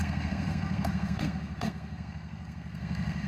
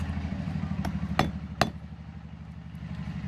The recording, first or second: second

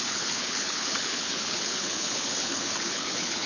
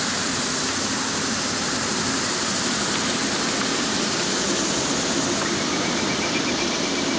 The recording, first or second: second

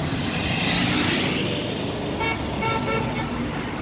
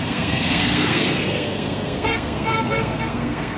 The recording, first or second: first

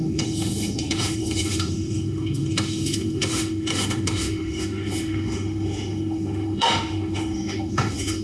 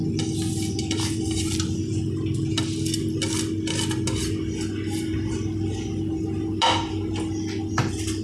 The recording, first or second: second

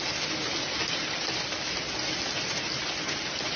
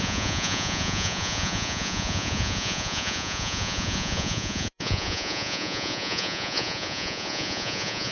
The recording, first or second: first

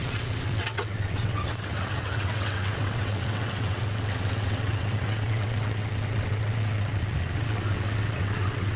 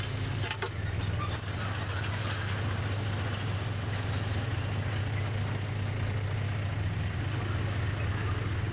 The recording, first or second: second